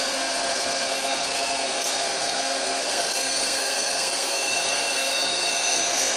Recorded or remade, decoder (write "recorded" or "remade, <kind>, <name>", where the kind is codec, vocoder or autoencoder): remade, codec, SNAC